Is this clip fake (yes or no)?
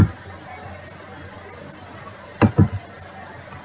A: no